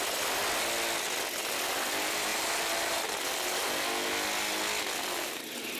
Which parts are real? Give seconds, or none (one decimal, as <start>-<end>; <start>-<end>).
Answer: 0.0-5.8